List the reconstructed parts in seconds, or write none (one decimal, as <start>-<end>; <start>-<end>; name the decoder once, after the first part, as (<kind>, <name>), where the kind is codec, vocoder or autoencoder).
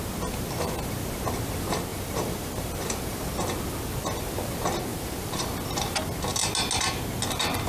1.9-3.3 (vocoder, BigVGAN v2); 4.9-5.4